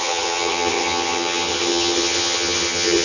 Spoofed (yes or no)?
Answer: yes